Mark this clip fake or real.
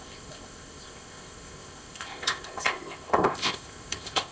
fake